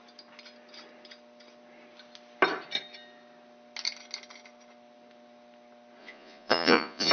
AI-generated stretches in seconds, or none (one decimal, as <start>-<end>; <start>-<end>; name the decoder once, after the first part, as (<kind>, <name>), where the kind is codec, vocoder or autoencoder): 6.0-7.1 (vocoder, Vocos)